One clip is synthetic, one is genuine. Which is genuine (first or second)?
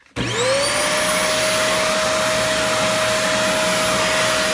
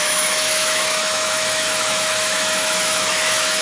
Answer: first